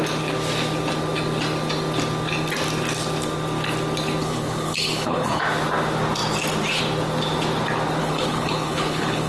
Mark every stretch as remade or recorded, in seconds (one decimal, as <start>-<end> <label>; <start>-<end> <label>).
0.0-4.2 recorded; 4.2-5.4 remade; 5.4-8.0 recorded; 8.0-9.3 remade